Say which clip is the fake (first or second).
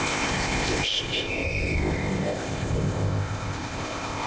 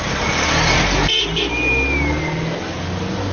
first